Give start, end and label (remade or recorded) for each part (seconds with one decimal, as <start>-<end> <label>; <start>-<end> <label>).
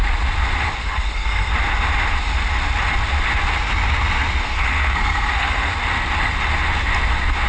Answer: 0.0-0.8 recorded; 0.8-1.5 remade; 1.5-4.4 recorded; 4.4-5.7 remade; 5.7-7.5 recorded